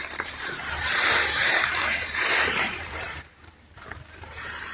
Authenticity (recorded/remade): remade